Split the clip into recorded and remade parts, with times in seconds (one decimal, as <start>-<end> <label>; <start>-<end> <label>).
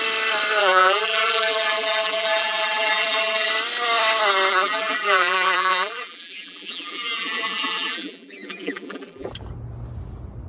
0.0-0.6 recorded; 0.6-3.5 remade; 3.5-4.5 recorded; 4.5-9.3 remade; 9.3-10.5 recorded